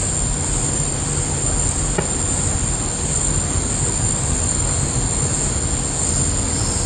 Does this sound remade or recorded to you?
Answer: recorded